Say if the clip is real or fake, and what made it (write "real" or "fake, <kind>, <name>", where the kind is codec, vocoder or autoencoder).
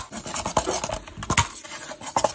real